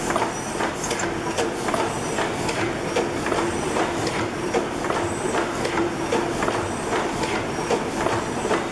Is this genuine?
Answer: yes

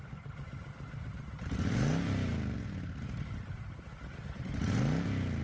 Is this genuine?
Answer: yes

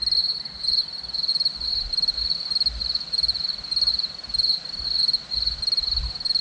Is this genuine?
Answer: yes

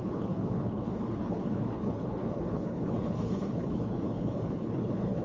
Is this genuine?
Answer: no